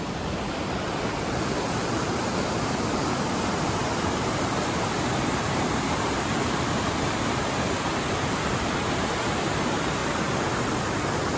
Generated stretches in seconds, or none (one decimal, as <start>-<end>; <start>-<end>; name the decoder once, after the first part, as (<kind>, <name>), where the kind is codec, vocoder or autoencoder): 0.0-10.0 (vocoder, BigVGAN v2)